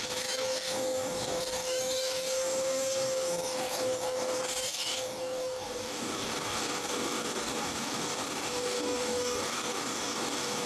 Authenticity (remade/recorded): remade